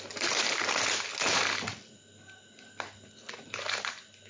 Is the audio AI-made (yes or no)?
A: no